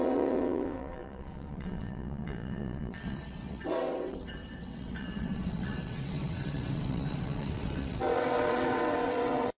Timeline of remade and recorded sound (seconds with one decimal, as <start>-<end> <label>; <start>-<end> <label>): 0.0-9.6 remade

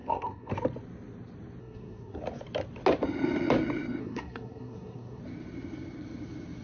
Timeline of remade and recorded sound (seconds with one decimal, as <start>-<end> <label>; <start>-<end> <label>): 0.0-0.5 remade; 0.5-1.6 recorded; 1.6-2.2 remade; 2.2-4.0 recorded; 4.0-5.2 remade; 5.2-6.6 recorded

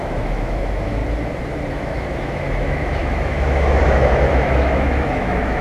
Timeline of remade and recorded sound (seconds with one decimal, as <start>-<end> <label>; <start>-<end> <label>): 0.0-1.0 remade; 1.0-1.7 recorded; 1.7-5.6 remade

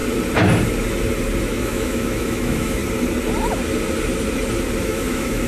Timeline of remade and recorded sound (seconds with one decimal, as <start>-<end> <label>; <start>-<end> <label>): 0.0-1.4 recorded; 1.4-2.8 remade; 2.8-4.8 recorded; 4.8-5.5 remade

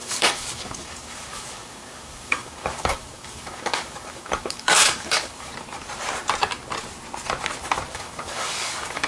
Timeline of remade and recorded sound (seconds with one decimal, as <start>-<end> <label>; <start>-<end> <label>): 0.0-5.5 remade; 5.5-7.9 recorded; 7.9-9.1 remade

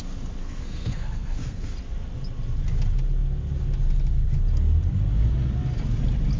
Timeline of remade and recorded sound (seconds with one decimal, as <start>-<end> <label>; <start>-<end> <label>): 0.0-0.4 recorded; 0.4-1.7 remade; 1.7-6.4 recorded